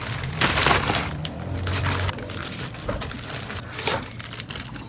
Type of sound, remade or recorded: remade